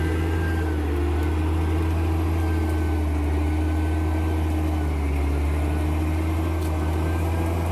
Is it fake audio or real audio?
real